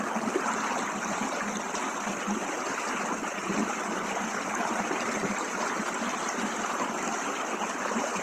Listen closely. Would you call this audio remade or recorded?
recorded